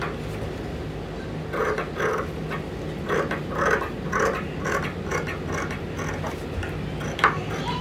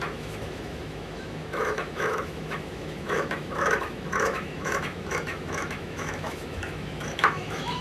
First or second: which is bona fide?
first